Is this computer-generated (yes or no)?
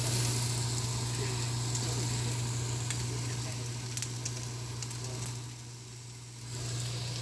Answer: no